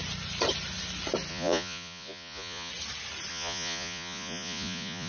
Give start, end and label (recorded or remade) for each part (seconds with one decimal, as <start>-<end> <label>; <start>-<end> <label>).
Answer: 0.0-1.3 recorded; 1.3-2.7 remade; 2.7-3.3 recorded; 3.3-5.1 remade

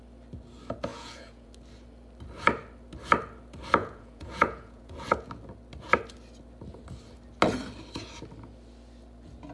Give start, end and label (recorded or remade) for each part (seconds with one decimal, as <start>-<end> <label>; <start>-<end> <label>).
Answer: 0.0-0.9 recorded; 0.9-1.5 remade; 1.5-3.8 recorded; 3.8-5.3 remade; 5.3-9.5 recorded

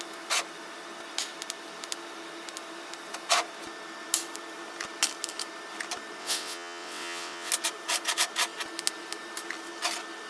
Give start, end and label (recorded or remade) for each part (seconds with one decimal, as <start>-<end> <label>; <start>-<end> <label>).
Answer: 0.0-6.2 recorded; 6.2-7.5 remade; 7.5-10.3 recorded

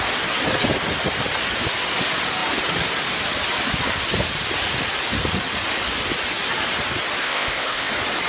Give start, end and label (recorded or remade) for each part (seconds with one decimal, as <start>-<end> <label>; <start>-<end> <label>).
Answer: 0.0-7.2 recorded; 7.2-7.9 remade; 7.9-8.3 recorded

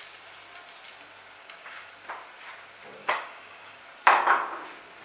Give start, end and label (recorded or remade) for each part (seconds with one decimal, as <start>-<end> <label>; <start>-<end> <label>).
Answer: 0.0-1.4 recorded; 1.4-1.9 remade; 1.9-3.0 recorded; 3.0-3.8 remade; 3.8-5.0 recorded

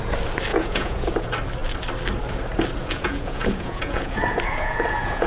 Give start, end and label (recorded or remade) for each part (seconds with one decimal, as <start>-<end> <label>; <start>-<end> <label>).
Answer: 0.0-0.5 recorded; 0.5-1.1 remade; 1.1-2.8 recorded; 2.8-5.3 remade

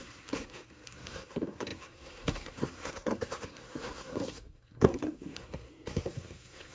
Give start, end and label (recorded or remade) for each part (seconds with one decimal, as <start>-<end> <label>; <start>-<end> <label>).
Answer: 0.0-6.7 remade

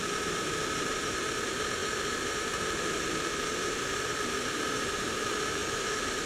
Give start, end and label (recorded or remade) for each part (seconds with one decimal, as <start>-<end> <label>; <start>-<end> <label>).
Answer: 0.0-6.3 remade